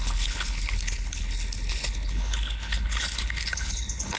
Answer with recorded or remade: remade